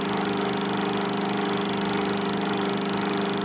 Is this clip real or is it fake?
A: real